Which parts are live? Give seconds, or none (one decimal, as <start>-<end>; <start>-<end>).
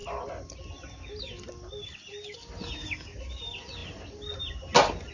0.0-5.1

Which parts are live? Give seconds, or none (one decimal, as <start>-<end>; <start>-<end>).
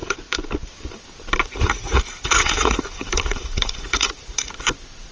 0.0-1.4; 4.5-5.1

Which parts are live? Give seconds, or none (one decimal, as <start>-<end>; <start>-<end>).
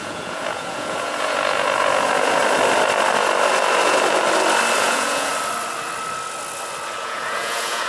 2.4-4.8; 5.3-7.0